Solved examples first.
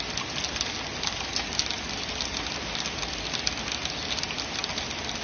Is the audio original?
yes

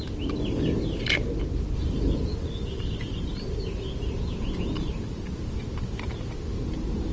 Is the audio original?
yes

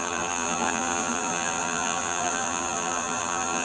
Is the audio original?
no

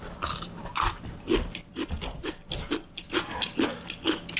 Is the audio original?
yes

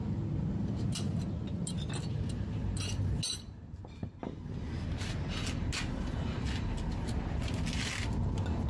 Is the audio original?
yes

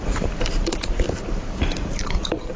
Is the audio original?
no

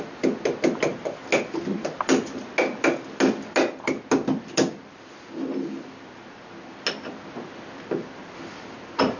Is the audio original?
yes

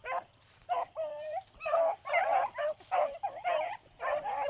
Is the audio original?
no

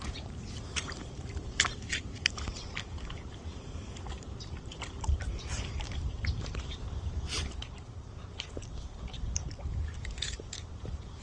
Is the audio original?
no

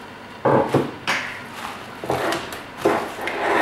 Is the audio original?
yes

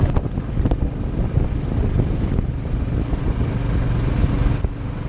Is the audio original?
yes